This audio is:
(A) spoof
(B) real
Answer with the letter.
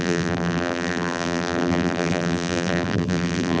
A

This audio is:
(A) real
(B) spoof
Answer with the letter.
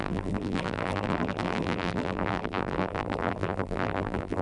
B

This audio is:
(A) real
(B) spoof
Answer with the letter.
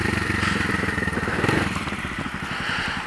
A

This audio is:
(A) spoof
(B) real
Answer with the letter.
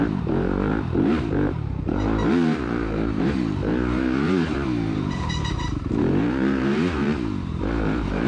A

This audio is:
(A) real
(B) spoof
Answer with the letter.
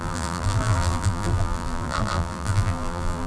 B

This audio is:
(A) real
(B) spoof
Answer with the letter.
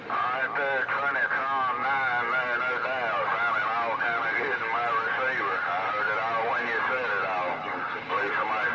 A